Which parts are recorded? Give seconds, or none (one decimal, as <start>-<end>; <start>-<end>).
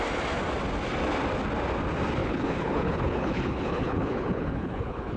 0.0-2.2